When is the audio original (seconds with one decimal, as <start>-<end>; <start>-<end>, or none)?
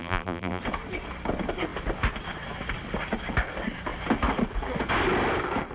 0.6-5.7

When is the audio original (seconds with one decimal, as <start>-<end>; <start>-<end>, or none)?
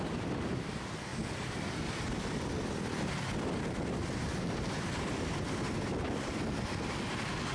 0.0-7.5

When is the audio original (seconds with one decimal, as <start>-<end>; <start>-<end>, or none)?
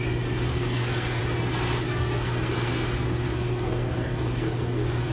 0.0-0.5; 1.2-2.0